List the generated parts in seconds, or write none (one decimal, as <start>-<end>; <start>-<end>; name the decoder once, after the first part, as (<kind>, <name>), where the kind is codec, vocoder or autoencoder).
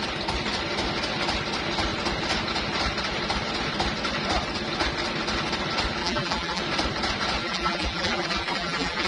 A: 6.0-6.6 (vocoder, BigVGAN v2); 7.4-9.1